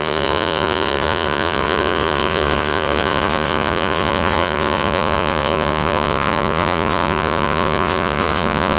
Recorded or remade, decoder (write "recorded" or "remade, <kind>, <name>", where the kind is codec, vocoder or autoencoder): remade, vocoder, Vocos